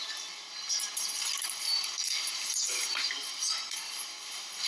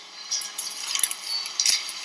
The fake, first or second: first